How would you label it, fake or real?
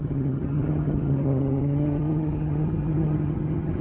fake